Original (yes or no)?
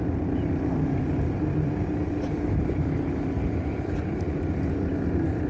no